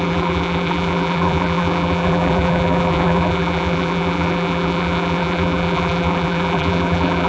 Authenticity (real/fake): fake